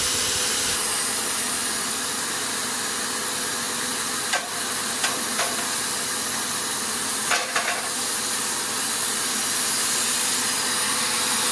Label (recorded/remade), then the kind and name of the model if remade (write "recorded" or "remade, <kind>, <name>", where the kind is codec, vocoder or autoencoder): recorded